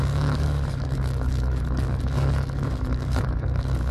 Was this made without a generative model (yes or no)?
no